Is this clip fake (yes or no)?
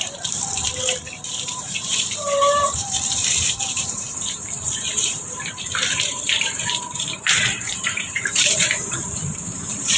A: yes